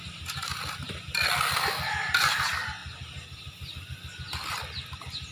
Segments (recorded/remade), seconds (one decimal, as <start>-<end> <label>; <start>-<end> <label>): 0.0-5.3 recorded